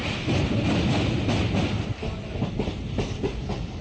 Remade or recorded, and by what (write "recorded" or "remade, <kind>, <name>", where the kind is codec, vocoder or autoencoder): recorded